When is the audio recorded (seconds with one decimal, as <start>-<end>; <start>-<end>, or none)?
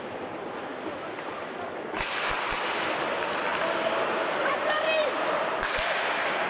0.0-6.5